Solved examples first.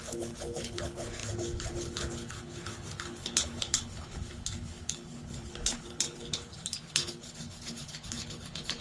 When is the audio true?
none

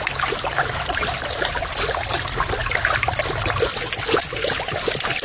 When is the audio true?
0.0-5.2

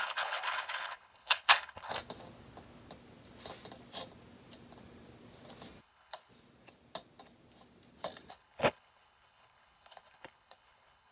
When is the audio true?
1.9-5.8; 6.3-8.3

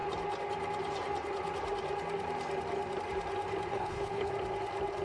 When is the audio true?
0.0-3.7; 4.3-5.0